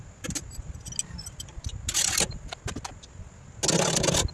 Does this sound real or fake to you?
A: real